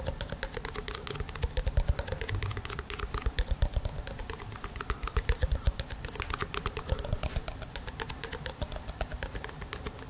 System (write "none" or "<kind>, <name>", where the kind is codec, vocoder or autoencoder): none